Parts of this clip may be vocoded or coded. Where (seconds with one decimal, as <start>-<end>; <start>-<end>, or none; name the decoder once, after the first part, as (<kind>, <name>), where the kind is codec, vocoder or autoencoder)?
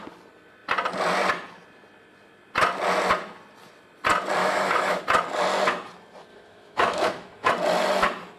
4.4-5.0 (autoencoder, DAC-VAE); 6.3-7.5